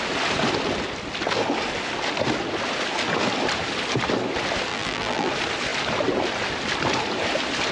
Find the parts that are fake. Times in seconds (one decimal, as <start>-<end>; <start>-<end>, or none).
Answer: 4.7-5.3